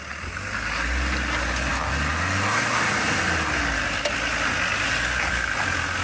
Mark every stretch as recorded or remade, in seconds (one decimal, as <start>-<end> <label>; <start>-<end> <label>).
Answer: 0.0-6.0 recorded